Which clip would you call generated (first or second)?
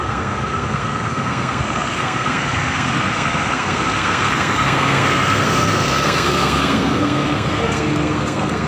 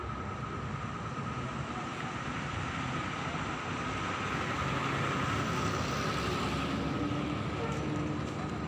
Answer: first